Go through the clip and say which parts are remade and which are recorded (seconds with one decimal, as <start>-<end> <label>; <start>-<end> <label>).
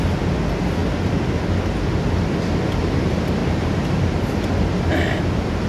0.0-3.4 recorded; 3.4-4.3 remade; 4.3-5.7 recorded